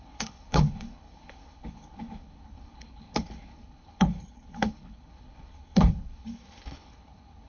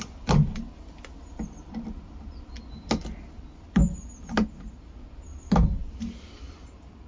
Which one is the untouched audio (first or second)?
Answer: second